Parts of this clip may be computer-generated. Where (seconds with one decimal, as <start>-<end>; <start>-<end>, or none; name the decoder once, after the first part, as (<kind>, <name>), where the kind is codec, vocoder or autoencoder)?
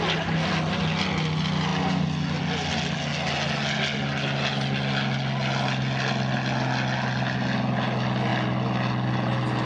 none